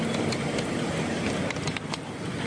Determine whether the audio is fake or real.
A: real